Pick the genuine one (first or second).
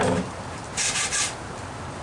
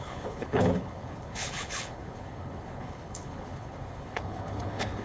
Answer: first